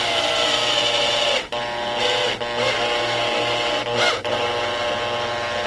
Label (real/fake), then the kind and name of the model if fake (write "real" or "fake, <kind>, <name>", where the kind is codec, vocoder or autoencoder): real